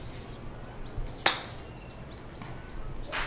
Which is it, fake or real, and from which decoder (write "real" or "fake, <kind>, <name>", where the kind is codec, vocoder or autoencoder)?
real